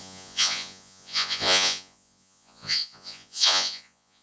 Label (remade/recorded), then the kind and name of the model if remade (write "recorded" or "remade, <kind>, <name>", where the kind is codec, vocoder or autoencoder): remade, vocoder, Vocos